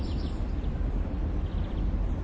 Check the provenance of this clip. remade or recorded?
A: recorded